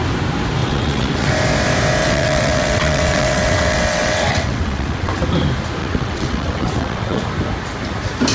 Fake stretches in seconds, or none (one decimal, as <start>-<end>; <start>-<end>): 0.6-1.3; 2.0-5.1; 5.8-7.2